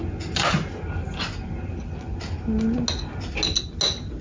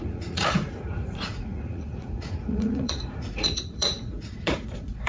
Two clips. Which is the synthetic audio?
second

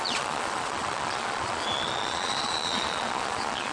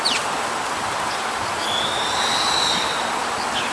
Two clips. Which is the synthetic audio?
first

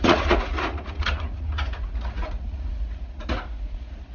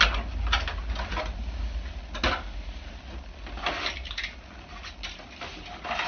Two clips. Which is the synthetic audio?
first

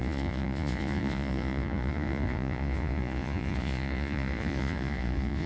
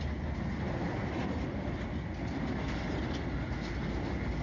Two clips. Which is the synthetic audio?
first